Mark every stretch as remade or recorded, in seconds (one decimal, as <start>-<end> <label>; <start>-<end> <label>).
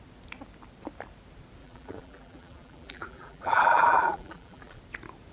0.0-1.6 recorded; 1.6-4.8 remade; 4.8-5.3 recorded